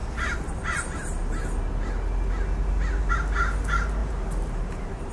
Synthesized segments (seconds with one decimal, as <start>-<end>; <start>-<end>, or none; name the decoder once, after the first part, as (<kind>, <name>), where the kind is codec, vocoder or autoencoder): 4.0-5.1 (vocoder, BigVGAN v2)